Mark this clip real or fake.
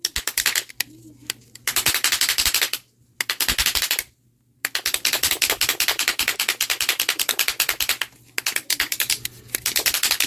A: real